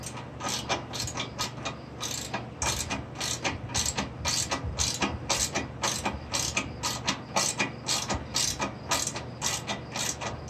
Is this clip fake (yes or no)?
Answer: no